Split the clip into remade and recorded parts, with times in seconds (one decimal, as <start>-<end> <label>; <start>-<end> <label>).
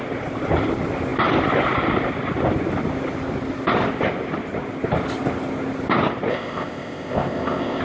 0.0-6.3 recorded; 6.3-7.8 remade